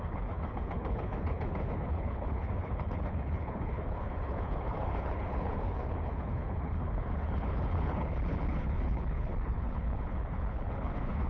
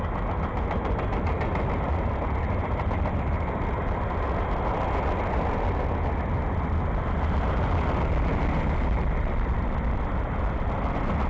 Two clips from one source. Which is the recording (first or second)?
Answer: second